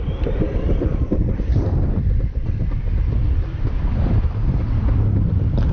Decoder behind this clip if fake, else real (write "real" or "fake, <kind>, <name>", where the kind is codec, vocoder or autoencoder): fake, vocoder, BigVGAN v2